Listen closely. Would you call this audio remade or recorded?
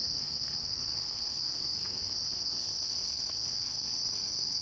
remade